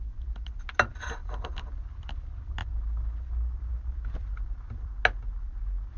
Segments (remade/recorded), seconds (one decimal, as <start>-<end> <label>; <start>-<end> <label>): 0.0-0.9 recorded; 0.9-2.2 remade; 2.2-4.2 recorded; 4.2-4.9 remade; 4.9-6.0 recorded